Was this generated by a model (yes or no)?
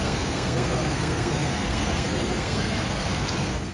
yes